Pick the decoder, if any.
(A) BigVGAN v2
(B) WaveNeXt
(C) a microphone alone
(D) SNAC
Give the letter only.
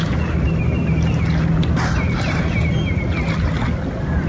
C